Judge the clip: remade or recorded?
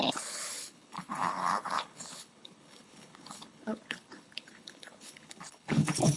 remade